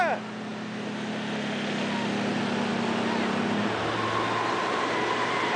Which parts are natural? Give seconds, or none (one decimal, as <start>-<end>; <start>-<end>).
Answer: 0.0-5.6